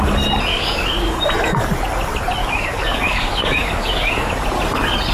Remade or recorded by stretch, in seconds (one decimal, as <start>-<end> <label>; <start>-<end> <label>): 0.0-0.5 recorded; 0.5-1.1 remade; 1.1-2.4 recorded; 2.4-4.3 remade; 4.3-5.1 recorded